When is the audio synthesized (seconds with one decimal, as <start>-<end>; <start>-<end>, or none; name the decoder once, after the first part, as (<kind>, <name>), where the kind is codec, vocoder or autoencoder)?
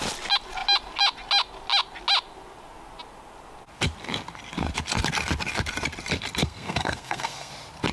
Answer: 6.4-7.5 (codec, SNAC)